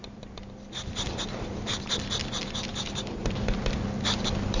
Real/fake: fake